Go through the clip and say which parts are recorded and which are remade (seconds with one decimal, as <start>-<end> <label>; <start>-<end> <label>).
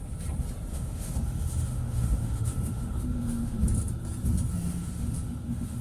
0.0-0.7 recorded; 0.7-3.6 remade; 3.6-4.5 recorded; 4.5-5.8 remade